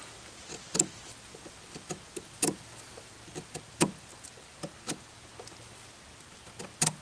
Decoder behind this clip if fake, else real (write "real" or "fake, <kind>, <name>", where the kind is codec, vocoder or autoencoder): real